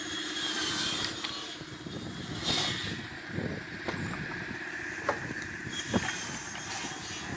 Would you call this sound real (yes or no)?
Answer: yes